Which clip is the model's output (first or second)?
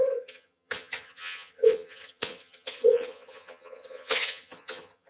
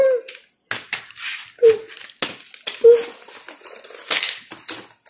first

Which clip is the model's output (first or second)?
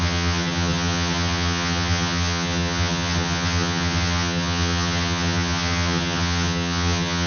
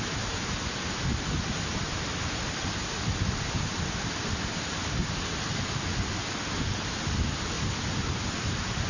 first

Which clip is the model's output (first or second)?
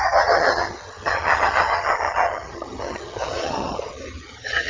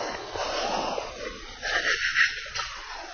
first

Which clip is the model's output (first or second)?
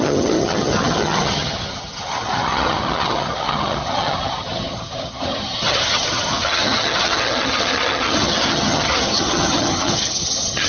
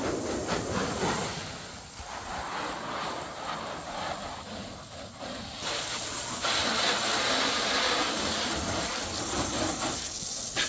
first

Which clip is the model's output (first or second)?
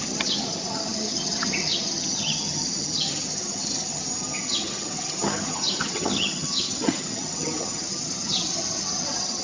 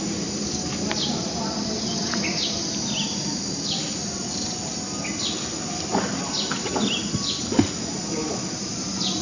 first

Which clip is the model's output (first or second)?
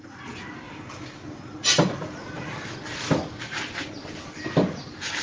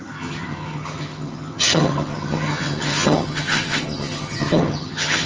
second